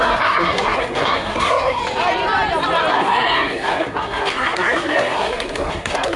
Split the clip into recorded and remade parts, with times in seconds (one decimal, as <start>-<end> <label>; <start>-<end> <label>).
0.0-1.8 remade; 1.8-2.9 recorded; 2.9-6.2 remade